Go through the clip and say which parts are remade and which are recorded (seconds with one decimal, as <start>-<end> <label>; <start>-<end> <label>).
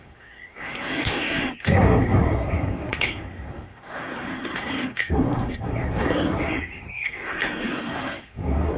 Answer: 0.0-8.8 remade